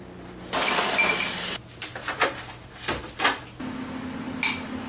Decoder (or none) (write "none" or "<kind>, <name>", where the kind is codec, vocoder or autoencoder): none